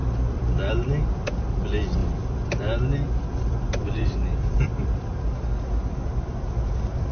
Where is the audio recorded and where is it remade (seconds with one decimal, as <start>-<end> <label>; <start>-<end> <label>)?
0.0-0.7 remade; 0.7-2.0 recorded; 2.0-6.3 remade; 6.3-7.1 recorded